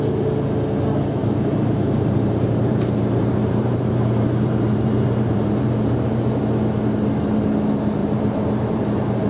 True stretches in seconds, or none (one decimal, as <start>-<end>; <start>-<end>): 0.0-1.2; 6.4-8.0